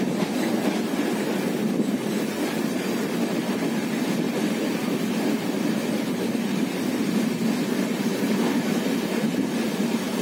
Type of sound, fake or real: real